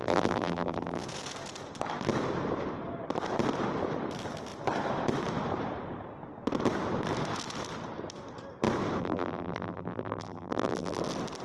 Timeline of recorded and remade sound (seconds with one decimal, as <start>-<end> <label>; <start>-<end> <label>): 0.0-1.0 remade; 1.0-9.0 recorded; 9.0-11.0 remade; 11.0-11.4 recorded